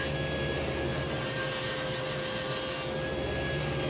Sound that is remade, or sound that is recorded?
recorded